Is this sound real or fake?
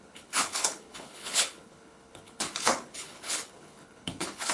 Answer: fake